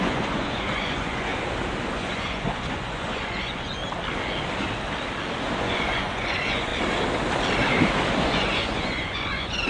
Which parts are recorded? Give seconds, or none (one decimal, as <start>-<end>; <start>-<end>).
1.3-1.9; 3.8-5.6; 6.7-8.2